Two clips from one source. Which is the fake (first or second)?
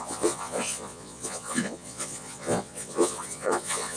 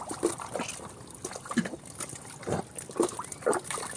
first